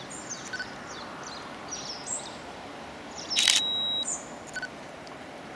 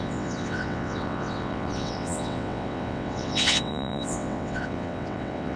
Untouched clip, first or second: first